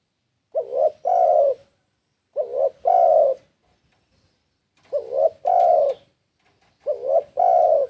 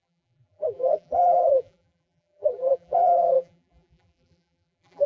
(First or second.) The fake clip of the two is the second